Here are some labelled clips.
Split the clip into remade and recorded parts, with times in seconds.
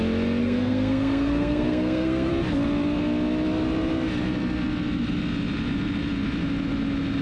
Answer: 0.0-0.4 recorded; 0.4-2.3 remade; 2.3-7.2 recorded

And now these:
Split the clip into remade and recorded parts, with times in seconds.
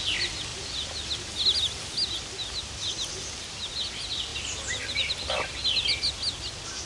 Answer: 0.0-6.9 recorded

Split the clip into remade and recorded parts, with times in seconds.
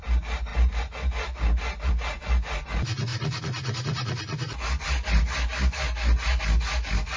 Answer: 0.0-7.2 recorded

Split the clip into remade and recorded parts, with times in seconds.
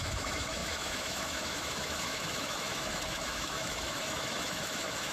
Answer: 0.0-5.1 remade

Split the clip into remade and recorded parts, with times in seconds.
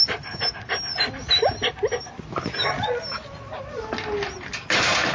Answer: 0.0-5.1 recorded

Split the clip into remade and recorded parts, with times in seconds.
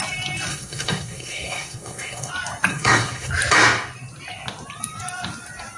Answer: 0.0-0.5 recorded; 0.5-2.3 remade; 2.3-2.7 recorded; 2.7-3.3 remade; 3.3-5.8 recorded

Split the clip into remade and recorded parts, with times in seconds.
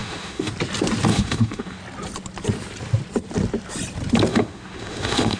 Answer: 0.0-0.5 remade; 0.5-1.1 recorded; 1.1-1.8 remade; 1.8-4.3 recorded; 4.3-5.4 remade